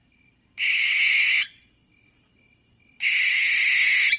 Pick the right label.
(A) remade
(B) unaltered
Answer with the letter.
B